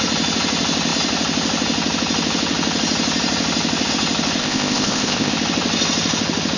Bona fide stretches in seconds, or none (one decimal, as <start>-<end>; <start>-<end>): 0.0-4.4; 5.3-6.6